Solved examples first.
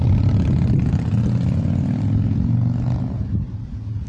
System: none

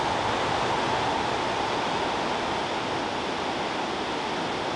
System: none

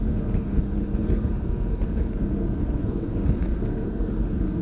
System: codec, SNAC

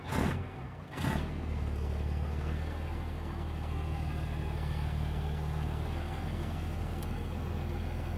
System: codec, SNAC